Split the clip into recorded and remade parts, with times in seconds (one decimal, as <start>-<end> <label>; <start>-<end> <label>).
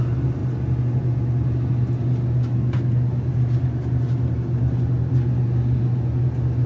0.0-6.7 recorded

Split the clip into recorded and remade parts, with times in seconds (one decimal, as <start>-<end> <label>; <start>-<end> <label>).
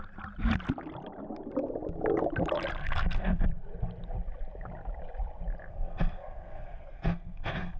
0.0-2.8 recorded; 2.8-3.4 remade; 3.4-5.7 recorded; 5.7-7.8 remade